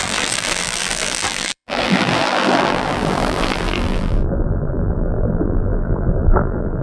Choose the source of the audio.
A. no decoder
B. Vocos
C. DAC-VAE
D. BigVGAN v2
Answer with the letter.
D